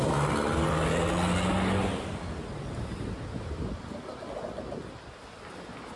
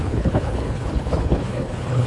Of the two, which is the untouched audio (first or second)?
first